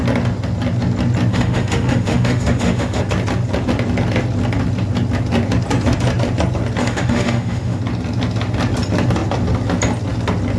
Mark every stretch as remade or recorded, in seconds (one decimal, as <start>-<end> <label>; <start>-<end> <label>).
0.0-1.3 recorded; 1.3-3.0 remade; 3.0-6.8 recorded; 6.8-7.8 remade; 7.8-10.6 recorded